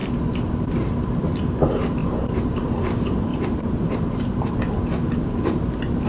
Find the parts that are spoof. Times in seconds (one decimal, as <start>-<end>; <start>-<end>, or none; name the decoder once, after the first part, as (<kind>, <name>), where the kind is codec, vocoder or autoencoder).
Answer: 0.0-1.3 (vocoder, BigVGAN v2); 2.0-2.8; 3.3-4.5